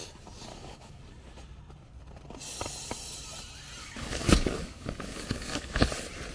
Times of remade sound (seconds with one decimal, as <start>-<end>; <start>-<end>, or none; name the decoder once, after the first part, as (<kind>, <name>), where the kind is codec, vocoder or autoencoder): 0.5-1.0 (codec, DAC); 3.8-5.8